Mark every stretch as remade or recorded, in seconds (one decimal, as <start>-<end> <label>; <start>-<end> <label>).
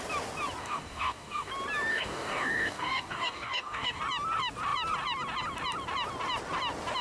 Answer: 0.0-0.6 recorded; 0.6-1.5 remade; 1.5-1.9 recorded; 1.9-4.0 remade; 4.0-7.0 recorded